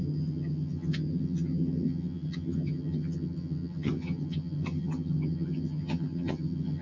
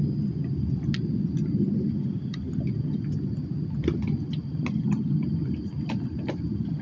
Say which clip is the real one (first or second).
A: second